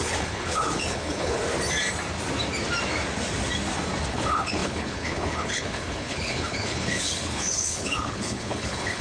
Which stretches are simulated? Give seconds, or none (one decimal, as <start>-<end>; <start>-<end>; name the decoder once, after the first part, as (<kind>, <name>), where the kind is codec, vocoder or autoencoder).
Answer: 0.0-1.4 (codec, HILCodec); 4.1-9.0